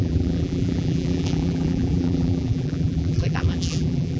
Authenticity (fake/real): fake